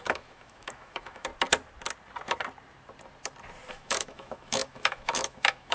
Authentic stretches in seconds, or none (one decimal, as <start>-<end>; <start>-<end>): 1.3-3.7